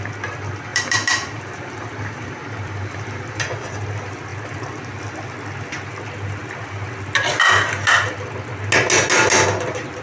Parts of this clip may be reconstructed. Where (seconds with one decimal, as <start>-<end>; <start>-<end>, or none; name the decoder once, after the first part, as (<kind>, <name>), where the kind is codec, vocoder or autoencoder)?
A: 0.7-3.4 (vocoder, BigVGAN v2)